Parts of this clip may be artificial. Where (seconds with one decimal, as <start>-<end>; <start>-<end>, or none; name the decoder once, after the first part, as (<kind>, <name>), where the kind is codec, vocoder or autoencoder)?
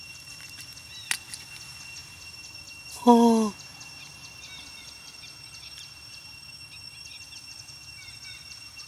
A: none